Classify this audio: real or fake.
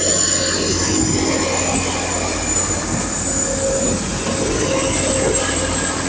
real